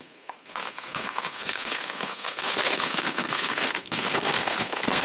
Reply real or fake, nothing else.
fake